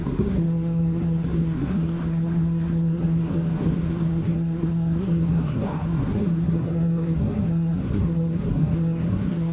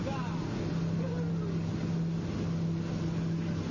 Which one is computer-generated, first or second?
first